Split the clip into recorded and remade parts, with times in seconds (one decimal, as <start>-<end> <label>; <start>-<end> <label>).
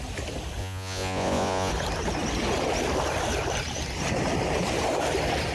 0.0-0.6 recorded; 0.6-1.7 remade; 1.7-5.5 recorded